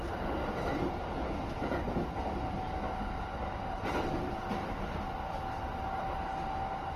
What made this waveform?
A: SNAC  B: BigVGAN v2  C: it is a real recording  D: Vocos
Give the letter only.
C